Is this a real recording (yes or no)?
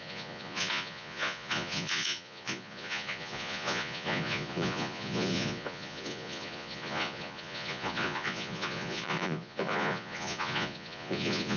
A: no